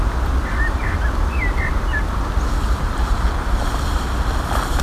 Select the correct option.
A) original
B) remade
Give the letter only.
A